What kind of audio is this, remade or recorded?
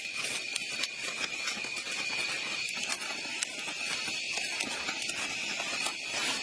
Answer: recorded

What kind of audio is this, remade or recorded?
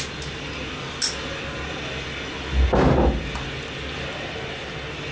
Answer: recorded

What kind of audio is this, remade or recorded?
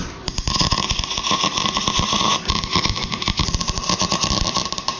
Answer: remade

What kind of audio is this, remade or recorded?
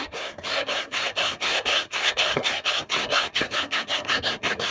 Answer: remade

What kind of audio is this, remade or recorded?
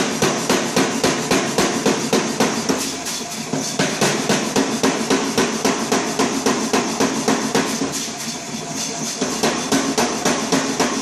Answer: recorded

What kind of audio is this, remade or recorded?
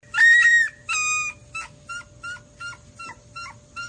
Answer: recorded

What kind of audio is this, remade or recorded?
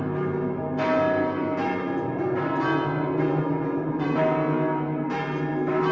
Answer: recorded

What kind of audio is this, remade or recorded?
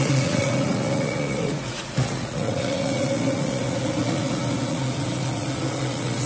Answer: remade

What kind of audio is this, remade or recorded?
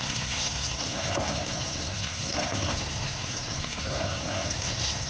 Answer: remade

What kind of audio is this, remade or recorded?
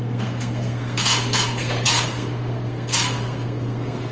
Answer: remade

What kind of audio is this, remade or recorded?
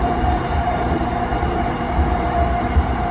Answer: remade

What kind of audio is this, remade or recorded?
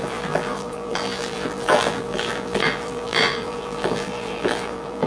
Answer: remade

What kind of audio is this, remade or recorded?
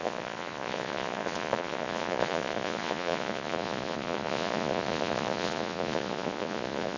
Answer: remade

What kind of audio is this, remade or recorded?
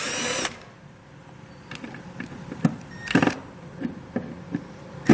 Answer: remade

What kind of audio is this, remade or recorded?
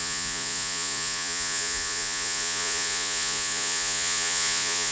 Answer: remade